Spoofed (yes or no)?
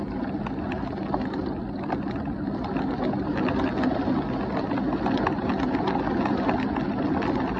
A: no